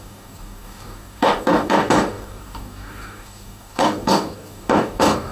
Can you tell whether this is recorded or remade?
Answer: remade